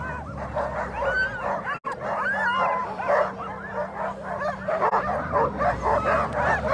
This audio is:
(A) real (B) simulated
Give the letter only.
A